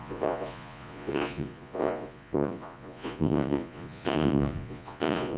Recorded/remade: remade